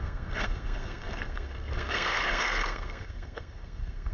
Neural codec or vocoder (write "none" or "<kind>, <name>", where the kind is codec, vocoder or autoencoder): codec, SNAC